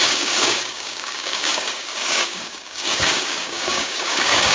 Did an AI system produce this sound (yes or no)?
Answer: yes